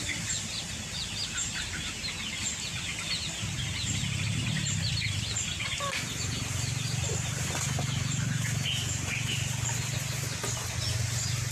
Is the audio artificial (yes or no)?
no